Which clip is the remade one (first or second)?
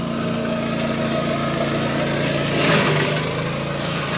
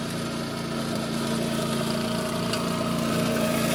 second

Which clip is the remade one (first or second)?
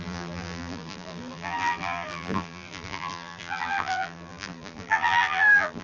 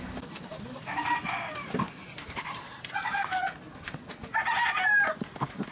first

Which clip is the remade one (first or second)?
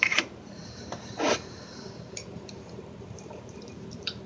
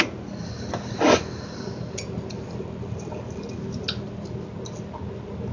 first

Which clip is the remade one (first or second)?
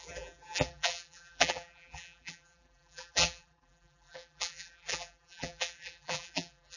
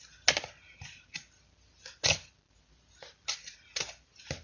first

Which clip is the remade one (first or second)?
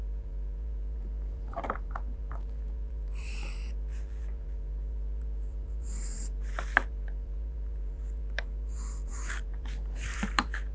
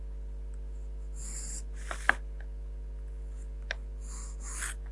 first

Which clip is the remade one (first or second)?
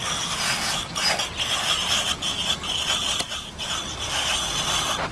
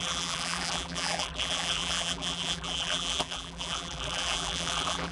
second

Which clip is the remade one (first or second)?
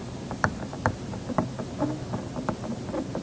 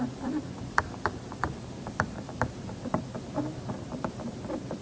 second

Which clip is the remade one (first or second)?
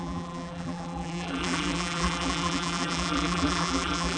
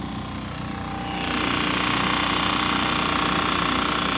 first